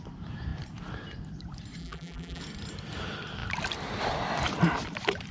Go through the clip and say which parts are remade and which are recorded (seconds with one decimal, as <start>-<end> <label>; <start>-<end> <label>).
0.0-1.8 recorded; 1.8-2.4 remade; 2.4-5.3 recorded